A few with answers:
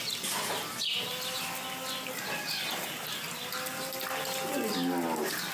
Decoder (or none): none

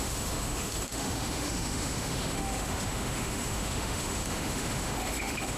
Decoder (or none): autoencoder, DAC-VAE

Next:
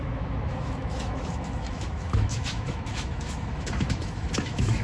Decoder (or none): autoencoder, DAC-VAE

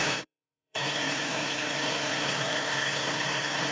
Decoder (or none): codec, SNAC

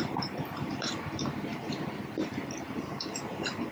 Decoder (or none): vocoder, BigVGAN v2